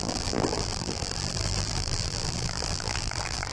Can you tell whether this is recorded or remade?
remade